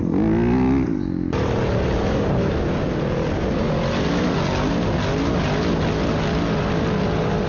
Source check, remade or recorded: recorded